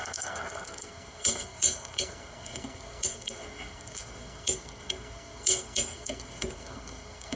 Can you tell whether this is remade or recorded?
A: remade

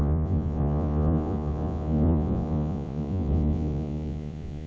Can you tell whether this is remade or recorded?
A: remade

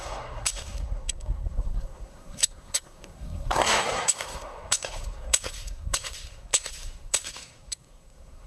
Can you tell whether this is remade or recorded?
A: remade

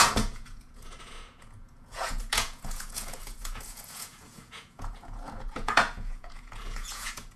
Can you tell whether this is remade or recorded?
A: remade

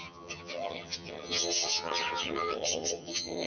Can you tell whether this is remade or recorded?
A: remade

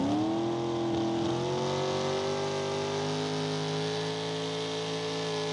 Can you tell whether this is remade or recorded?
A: recorded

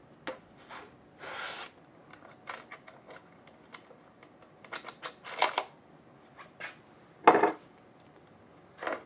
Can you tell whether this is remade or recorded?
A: recorded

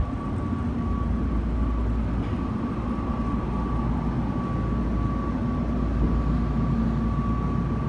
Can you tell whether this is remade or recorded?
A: recorded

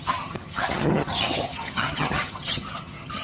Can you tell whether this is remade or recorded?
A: remade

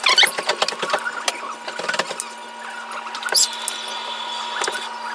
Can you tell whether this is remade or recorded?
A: recorded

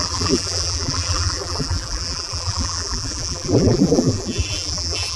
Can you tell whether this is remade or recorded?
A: remade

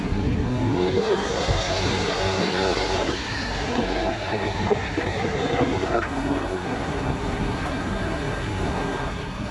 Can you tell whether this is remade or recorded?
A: remade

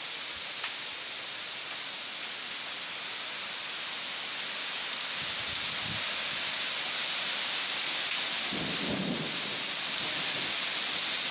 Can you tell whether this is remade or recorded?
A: recorded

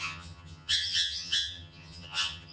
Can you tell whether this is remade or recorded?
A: remade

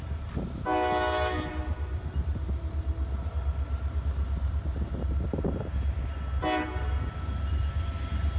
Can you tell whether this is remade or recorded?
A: recorded